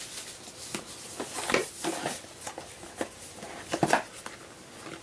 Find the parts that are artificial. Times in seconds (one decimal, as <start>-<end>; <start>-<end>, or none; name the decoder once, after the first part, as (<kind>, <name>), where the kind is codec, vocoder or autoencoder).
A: none